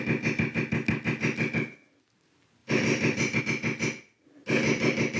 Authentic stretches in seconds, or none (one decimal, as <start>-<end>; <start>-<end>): 0.0-2.6; 3.4-4.4